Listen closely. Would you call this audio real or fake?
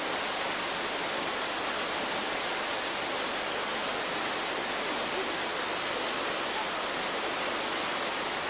real